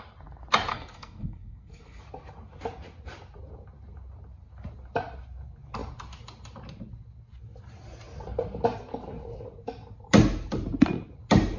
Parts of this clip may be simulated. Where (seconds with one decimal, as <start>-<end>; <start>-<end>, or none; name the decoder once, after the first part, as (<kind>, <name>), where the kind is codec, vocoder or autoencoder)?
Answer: 0.7-2.0 (codec, SNAC)